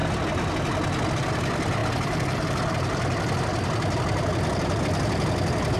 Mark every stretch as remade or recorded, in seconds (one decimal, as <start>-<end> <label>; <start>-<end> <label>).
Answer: 0.0-1.1 recorded; 1.1-1.8 remade; 1.8-4.8 recorded; 4.8-5.8 remade